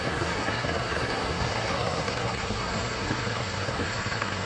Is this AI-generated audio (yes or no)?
yes